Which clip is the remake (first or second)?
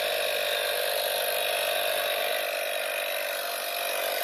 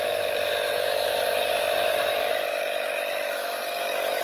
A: second